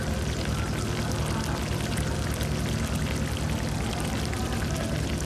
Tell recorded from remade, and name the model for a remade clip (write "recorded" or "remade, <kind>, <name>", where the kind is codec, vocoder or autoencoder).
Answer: recorded